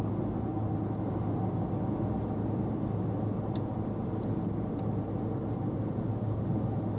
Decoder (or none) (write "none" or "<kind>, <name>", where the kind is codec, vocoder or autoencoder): none